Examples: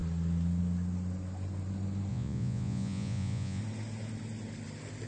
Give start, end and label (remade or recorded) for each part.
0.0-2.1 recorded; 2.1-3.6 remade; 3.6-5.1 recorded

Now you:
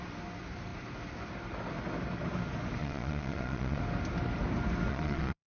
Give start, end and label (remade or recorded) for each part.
0.0-2.8 recorded; 2.8-3.8 remade; 3.8-4.9 recorded; 4.9-5.6 remade

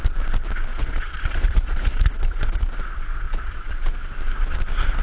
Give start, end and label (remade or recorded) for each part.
0.0-0.7 recorded; 0.7-3.7 remade; 3.7-5.0 recorded

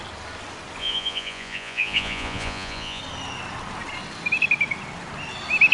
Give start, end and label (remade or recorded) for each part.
0.0-0.8 recorded; 0.8-3.0 remade; 3.0-5.7 recorded

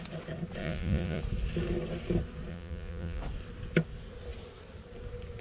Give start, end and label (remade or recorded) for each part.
0.0-0.6 recorded; 0.6-1.2 remade; 1.2-2.5 recorded; 2.5-3.2 remade; 3.2-5.4 recorded

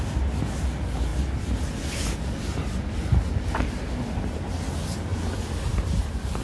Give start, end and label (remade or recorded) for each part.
0.0-6.4 recorded

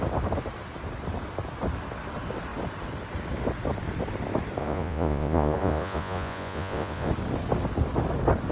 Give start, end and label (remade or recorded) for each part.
0.0-4.6 recorded; 4.6-7.1 remade; 7.1-8.5 recorded